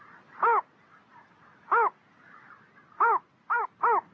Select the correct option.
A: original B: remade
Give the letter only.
A